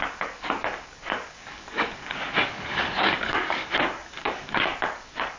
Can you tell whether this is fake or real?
fake